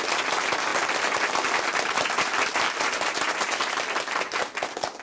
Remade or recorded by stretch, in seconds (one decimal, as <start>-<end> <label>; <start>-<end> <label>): 0.0-5.0 recorded

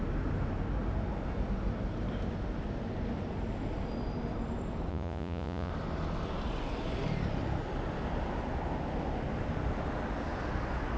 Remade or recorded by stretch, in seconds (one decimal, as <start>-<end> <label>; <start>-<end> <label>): 0.0-4.9 recorded; 4.9-5.7 remade; 5.7-11.0 recorded

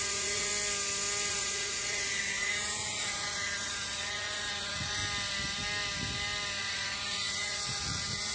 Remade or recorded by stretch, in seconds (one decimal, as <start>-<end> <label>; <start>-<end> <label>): 0.0-0.5 remade; 0.5-1.3 recorded; 1.3-5.0 remade; 5.0-6.6 recorded; 6.6-8.3 remade

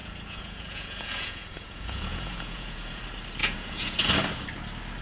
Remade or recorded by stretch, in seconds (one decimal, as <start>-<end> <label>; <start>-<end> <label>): 0.0-3.0 remade; 3.0-3.4 recorded; 3.4-4.1 remade; 4.1-5.0 recorded

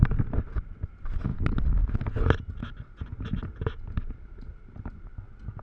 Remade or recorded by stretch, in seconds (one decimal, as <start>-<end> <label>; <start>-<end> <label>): 0.0-5.6 recorded